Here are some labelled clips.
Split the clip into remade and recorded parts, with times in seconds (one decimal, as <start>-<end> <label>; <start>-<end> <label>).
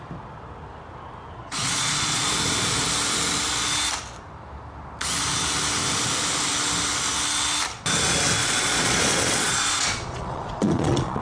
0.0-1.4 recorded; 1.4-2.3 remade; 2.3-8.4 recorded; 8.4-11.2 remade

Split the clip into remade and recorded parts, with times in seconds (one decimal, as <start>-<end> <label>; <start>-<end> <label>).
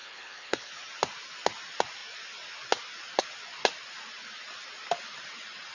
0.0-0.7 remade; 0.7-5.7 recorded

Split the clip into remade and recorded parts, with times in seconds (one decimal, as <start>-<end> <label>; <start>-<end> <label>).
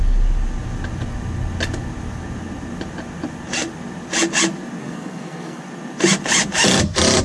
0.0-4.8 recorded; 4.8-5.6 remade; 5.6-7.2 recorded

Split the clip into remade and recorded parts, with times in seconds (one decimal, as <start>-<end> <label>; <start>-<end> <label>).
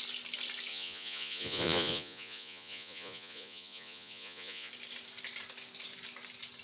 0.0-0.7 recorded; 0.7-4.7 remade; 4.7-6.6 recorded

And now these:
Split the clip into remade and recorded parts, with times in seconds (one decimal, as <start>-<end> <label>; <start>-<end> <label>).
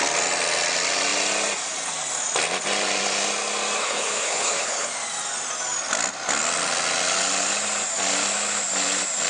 0.0-3.8 recorded; 3.8-4.9 remade; 4.9-9.3 recorded